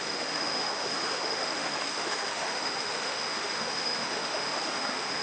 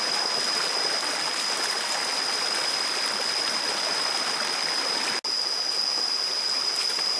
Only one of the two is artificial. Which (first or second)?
first